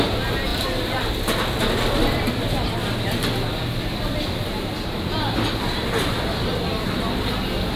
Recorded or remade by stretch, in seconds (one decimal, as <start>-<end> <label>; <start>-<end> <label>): 0.0-7.8 recorded